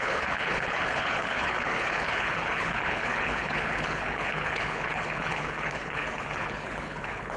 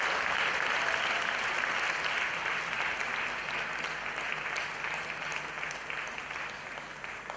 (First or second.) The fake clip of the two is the first